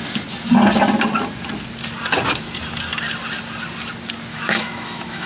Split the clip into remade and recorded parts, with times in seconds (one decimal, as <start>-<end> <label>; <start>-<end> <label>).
0.0-4.3 recorded; 4.3-5.3 remade